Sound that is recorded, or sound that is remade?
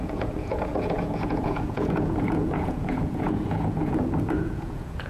remade